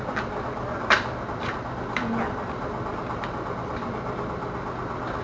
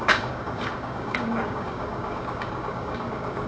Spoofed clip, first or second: second